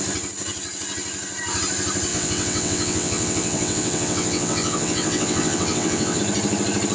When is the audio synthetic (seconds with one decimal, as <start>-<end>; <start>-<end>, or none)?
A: 2.1-6.2